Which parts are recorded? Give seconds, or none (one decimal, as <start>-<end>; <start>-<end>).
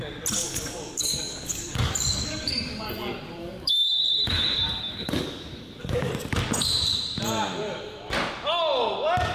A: 0.0-0.4; 2.9-3.4; 6.4-9.3